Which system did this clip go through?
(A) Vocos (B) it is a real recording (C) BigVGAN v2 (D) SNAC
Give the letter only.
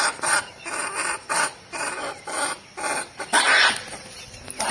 B